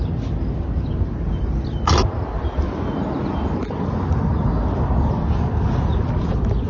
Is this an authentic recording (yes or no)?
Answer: yes